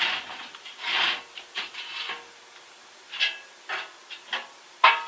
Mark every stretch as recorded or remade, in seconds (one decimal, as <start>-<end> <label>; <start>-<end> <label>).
0.0-5.1 recorded